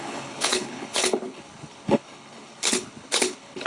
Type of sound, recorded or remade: remade